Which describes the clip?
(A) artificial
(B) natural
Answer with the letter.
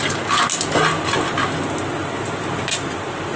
B